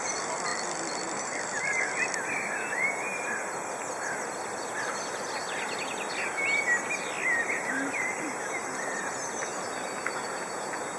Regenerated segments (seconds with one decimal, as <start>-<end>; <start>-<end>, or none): 0.5-2.0; 3.0-6.1; 7.4-7.9